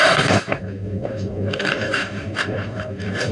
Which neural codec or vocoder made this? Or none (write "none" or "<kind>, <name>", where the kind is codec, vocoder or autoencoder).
codec, DAC